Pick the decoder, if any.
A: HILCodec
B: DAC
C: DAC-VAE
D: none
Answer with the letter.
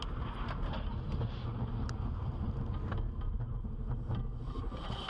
D